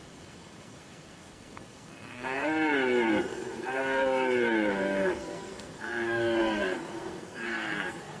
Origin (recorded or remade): remade